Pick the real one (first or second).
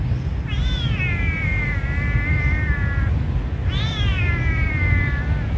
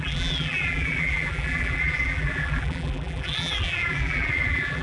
first